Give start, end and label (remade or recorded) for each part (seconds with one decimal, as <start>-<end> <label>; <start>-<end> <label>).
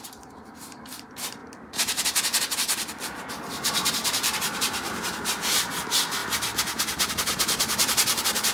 0.0-1.4 remade; 1.4-3.3 recorded; 3.3-6.2 remade; 6.2-7.1 recorded; 7.1-8.5 remade